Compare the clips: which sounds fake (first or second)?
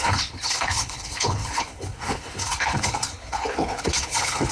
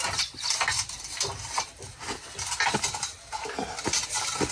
first